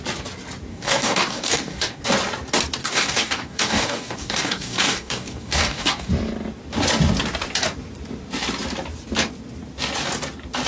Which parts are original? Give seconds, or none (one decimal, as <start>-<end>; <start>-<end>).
0.0-0.7; 2.0-2.8; 6.1-10.7